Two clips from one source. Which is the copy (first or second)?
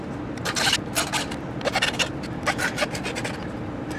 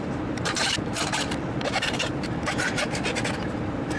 second